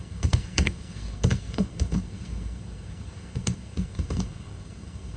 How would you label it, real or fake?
fake